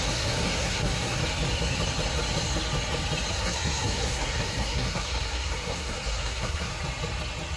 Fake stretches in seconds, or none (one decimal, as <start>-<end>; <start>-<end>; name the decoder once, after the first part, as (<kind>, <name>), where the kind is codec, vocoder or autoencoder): 0.0-1.2 (codec, SNAC); 3.3-6.7